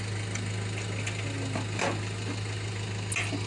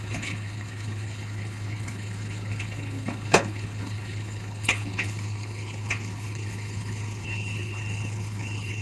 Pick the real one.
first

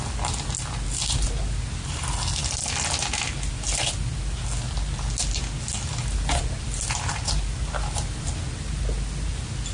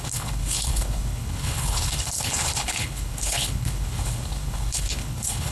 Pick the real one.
first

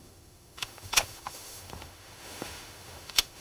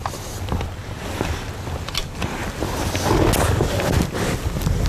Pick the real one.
second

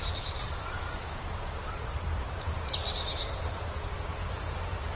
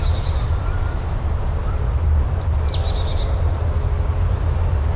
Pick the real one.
second